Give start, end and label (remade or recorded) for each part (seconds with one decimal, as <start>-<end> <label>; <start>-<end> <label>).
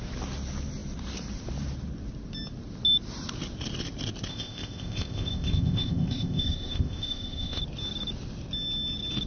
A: 0.0-4.3 recorded; 4.3-7.6 remade; 7.6-9.3 recorded